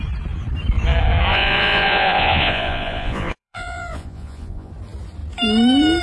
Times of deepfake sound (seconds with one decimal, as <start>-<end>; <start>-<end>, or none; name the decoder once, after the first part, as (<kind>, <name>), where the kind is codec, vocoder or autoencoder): 1.3-4.7 (vocoder, Vocos)